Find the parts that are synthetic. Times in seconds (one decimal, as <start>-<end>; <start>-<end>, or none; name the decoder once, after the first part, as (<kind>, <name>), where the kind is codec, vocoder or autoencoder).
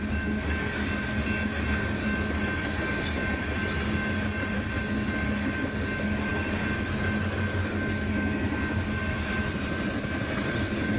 none